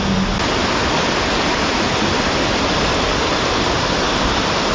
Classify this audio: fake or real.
real